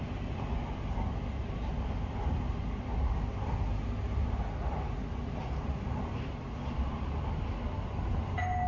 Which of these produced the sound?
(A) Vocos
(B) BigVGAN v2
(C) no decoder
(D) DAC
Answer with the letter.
C